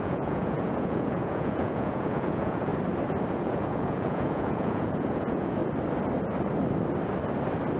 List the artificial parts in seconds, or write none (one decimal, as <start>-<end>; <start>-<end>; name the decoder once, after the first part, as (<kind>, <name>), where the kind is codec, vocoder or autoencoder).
0.0-2.7 (vocoder, Vocos); 3.3-5.6